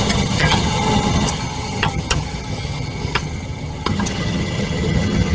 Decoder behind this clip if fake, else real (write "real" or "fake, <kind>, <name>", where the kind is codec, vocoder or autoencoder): fake, vocoder, HiFi-GAN